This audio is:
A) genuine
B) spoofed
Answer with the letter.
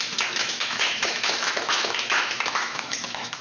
B